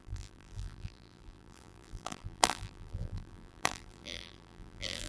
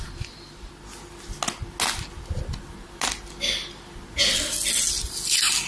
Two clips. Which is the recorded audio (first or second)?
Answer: second